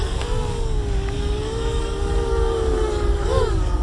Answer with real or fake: fake